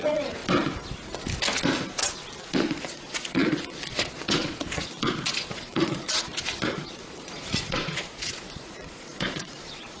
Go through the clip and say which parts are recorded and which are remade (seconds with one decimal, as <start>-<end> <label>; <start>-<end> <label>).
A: 0.0-0.4 remade; 0.4-2.4 recorded; 2.4-10.0 remade